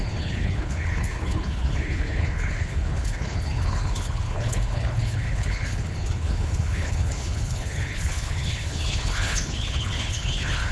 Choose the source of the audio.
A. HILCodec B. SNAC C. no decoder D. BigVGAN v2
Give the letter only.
A